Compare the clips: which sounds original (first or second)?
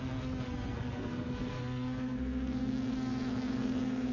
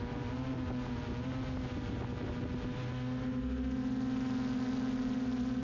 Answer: second